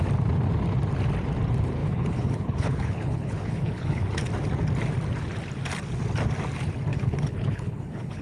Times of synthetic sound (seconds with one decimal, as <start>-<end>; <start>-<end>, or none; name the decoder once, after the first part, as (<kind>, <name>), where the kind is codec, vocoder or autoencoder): 1.8-4.2 (codec, HILCodec); 6.9-8.2